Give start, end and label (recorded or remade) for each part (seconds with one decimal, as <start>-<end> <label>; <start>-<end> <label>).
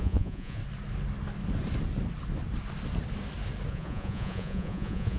0.0-0.6 remade; 0.6-3.7 recorded; 3.7-5.2 remade